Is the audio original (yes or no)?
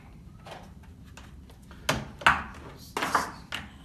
yes